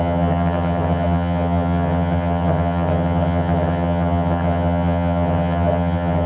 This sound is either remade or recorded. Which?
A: remade